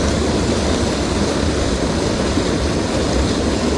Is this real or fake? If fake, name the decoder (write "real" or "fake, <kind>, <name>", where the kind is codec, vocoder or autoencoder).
real